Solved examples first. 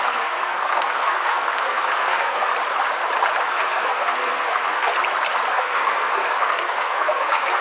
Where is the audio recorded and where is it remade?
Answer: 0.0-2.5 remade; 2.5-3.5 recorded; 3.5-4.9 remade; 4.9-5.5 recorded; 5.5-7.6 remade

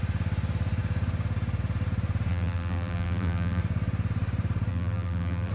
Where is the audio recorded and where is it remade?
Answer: 0.0-2.3 recorded; 2.3-3.6 remade; 3.6-4.7 recorded; 4.7-5.5 remade

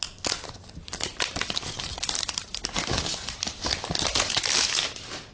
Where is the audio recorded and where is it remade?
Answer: 0.0-5.3 recorded

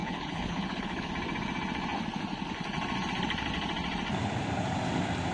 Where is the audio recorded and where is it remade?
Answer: 0.0-1.1 remade; 1.1-5.3 recorded